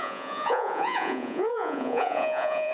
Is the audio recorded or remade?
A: remade